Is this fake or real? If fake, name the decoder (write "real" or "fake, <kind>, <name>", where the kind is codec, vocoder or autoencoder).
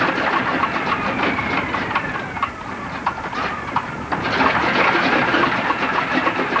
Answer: real